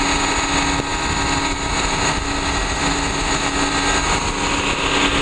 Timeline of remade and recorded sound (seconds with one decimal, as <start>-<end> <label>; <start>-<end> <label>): 0.0-5.2 recorded